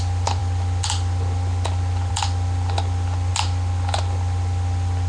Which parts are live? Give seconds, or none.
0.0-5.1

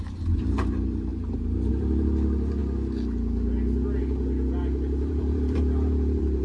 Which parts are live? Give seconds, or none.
2.6-4.0

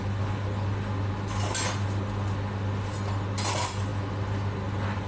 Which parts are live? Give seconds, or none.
0.0-5.1

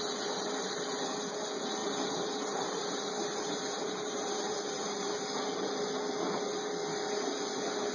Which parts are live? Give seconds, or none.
0.0-1.8; 5.1-7.9